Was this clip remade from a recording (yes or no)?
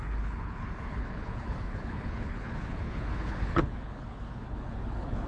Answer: yes